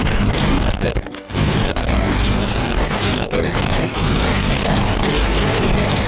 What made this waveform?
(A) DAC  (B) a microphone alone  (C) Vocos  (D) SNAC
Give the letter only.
A